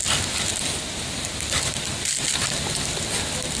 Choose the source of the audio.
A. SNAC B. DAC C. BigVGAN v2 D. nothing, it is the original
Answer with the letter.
D